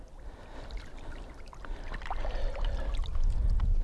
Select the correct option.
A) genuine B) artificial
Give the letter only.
A